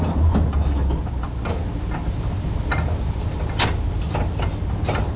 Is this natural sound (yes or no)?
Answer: yes